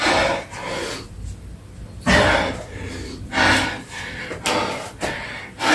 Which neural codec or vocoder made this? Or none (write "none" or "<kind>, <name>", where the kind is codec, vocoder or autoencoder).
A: none